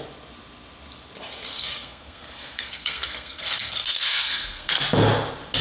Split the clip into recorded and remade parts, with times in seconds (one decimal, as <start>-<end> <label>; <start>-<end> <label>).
0.0-1.5 recorded; 1.5-4.8 remade; 4.8-5.6 recorded